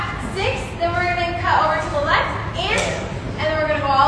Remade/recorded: recorded